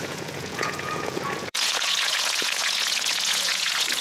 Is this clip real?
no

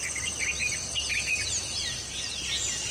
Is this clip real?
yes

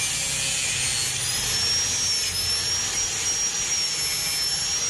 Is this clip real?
yes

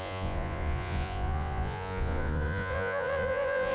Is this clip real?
no